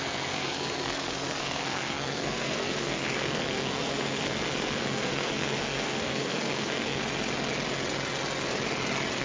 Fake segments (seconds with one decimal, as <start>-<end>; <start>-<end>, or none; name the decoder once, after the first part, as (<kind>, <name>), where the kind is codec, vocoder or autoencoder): 0.0-7.0 (codec, SNAC)